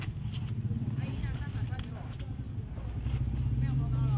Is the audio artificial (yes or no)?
no